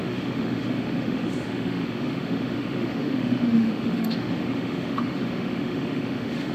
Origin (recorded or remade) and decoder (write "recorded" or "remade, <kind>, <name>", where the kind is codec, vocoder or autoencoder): remade, autoencoder, DAC-VAE